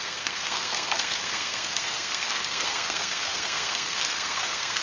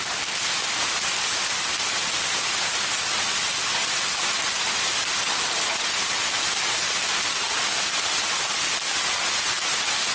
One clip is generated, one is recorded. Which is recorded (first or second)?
second